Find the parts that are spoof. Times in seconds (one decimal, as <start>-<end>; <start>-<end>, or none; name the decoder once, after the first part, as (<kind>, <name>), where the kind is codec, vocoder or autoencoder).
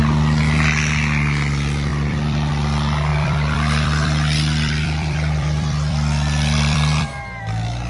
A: 1.9-2.5 (vocoder, BigVGAN v2); 3.1-7.2